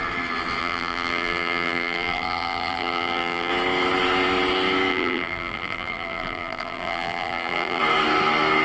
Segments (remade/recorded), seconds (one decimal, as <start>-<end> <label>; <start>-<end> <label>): 0.0-0.6 recorded; 0.6-3.5 remade; 3.5-4.9 recorded; 4.9-7.8 remade; 7.8-8.6 recorded